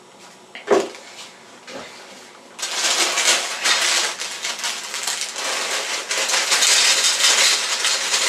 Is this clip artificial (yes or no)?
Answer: no